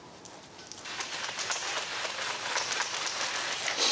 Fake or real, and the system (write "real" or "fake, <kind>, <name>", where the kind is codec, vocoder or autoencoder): real